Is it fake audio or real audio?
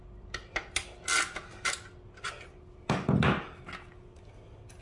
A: real